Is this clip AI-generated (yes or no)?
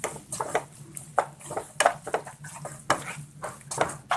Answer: no